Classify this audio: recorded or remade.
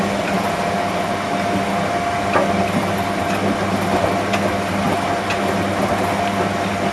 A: recorded